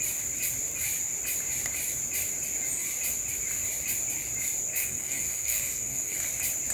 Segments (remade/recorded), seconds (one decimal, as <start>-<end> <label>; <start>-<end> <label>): 0.0-4.7 recorded; 4.7-6.2 remade; 6.2-6.7 recorded